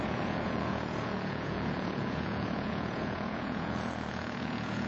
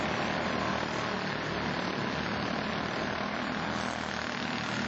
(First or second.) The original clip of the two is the second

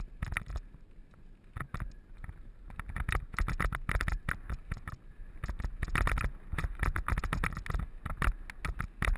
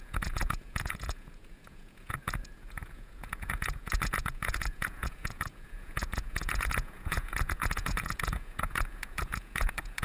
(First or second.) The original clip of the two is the first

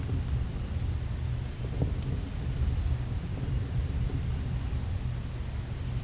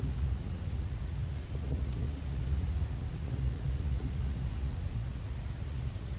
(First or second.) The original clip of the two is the first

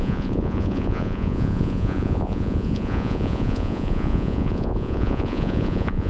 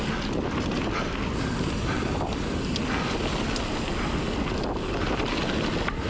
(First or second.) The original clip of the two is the second